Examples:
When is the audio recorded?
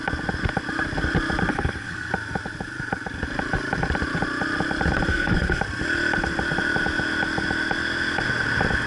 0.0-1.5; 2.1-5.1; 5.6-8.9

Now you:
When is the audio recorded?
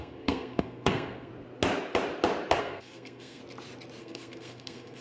1.3-2.6; 3.4-4.0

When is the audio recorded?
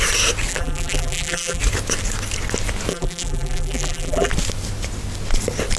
0.0-0.5; 1.6-2.9; 4.3-5.8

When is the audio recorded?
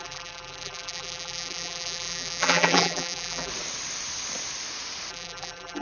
3.5-5.1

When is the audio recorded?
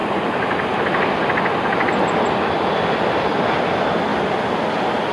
0.0-5.1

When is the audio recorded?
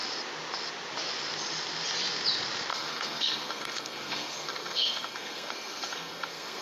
0.0-2.7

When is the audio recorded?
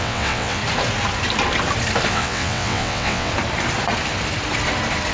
0.6-2.1; 3.3-5.1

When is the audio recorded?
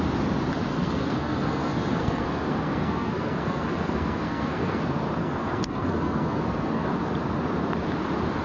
0.0-0.7; 4.8-5.2; 6.9-8.4